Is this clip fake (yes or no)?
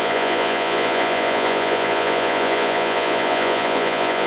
yes